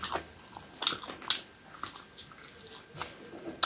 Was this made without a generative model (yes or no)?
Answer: yes